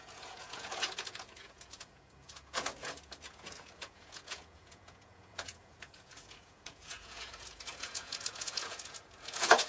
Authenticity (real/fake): fake